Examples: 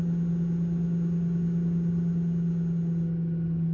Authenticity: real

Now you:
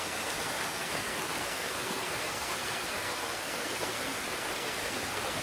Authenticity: fake